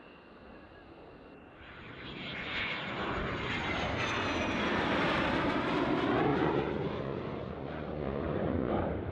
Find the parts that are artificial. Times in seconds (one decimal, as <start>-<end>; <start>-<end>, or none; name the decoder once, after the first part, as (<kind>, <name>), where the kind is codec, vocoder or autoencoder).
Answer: 2.3-3.2 (vocoder, Vocos); 6.3-8.7